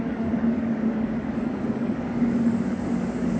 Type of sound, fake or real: fake